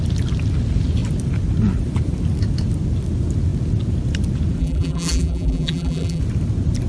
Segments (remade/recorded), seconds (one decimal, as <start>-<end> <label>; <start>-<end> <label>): 0.0-4.6 recorded; 4.6-6.2 remade; 6.2-6.9 recorded